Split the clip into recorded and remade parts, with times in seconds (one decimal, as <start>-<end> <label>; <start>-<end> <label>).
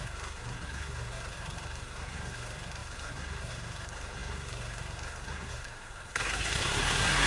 0.0-7.3 remade